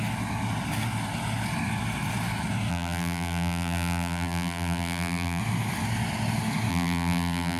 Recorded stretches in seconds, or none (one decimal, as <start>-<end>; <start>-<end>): 0.0-2.7; 5.4-6.7

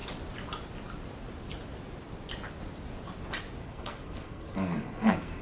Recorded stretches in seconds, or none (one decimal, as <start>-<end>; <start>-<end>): 0.0-3.6

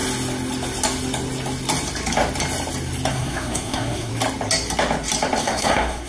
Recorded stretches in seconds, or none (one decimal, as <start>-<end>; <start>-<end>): 0.0-3.1; 4.1-5.4

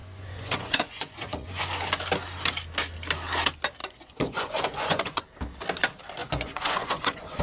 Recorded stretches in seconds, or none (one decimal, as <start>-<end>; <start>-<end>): 1.6-3.8; 5.2-6.2

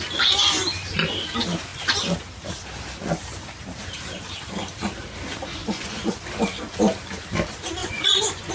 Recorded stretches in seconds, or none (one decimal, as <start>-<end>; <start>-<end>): 0.0-5.6; 6.2-7.8

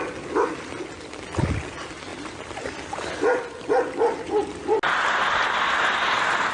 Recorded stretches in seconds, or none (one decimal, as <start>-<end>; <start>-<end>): 0.0-6.5

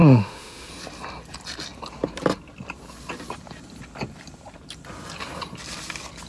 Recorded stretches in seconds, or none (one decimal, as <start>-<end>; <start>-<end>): 0.7-6.3

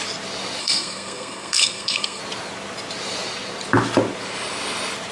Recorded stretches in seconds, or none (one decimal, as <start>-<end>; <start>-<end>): 0.0-0.6; 2.2-5.1